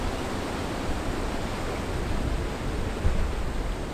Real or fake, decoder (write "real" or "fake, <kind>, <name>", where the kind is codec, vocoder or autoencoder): real